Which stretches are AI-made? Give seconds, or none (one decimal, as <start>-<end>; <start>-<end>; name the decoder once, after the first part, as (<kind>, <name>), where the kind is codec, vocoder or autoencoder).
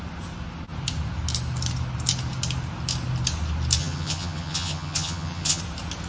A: 3.8-5.6 (vocoder, HiFi-GAN)